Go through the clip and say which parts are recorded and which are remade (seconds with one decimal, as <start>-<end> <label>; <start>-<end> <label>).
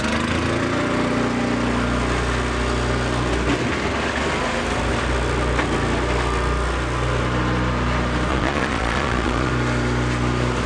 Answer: 0.0-8.3 recorded; 8.3-9.5 remade; 9.5-10.7 recorded